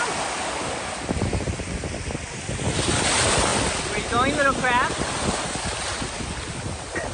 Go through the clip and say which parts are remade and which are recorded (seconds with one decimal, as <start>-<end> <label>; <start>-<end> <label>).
0.0-7.1 recorded